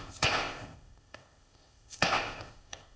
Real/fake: fake